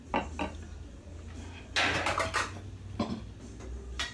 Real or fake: real